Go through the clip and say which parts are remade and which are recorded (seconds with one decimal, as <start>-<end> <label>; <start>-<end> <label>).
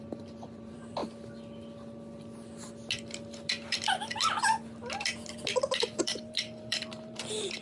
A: 0.0-1.0 remade; 1.0-5.6 recorded; 5.6-7.6 remade